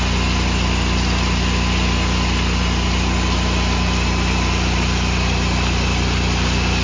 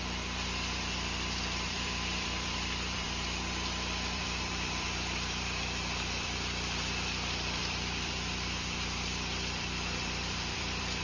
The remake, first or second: second